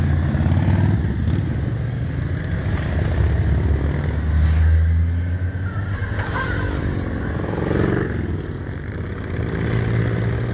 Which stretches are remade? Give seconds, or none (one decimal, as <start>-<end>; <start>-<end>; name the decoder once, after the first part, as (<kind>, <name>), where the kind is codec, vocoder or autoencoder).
none